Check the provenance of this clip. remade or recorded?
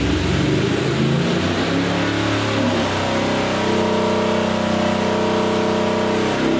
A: recorded